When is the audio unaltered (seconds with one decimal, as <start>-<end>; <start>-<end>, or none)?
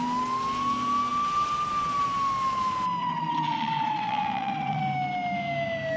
0.0-3.0; 4.8-6.0